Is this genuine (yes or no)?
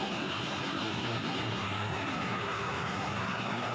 no